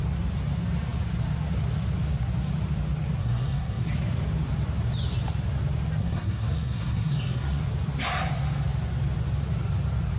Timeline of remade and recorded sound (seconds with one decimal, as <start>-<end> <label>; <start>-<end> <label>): 0.0-3.2 recorded; 3.2-3.9 remade; 3.9-6.0 recorded; 6.0-7.6 remade; 7.6-10.2 recorded